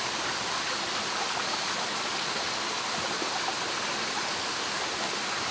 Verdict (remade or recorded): recorded